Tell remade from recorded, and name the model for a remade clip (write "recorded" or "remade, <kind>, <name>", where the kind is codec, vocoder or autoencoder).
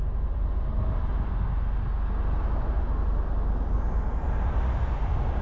recorded